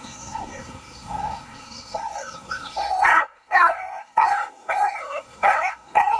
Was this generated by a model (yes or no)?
yes